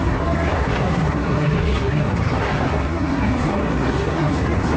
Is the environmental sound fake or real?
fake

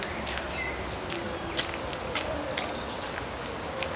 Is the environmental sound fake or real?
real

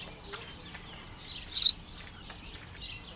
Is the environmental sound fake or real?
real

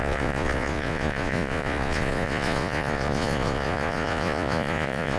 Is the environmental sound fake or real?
fake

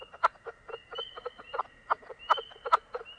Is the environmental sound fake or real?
real